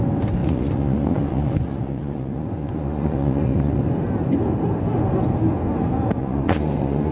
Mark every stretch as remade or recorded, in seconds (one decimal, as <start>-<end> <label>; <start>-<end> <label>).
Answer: 0.0-0.4 recorded; 0.4-3.9 remade; 3.9-6.2 recorded; 6.2-7.1 remade